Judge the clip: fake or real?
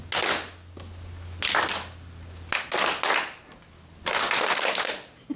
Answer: real